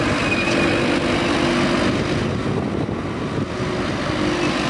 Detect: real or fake real